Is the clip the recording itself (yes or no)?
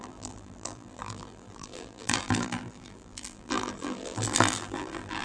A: no